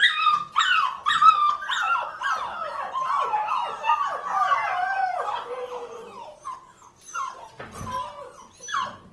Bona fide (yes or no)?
yes